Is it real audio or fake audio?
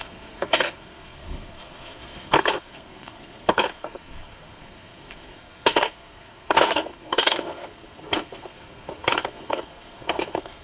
fake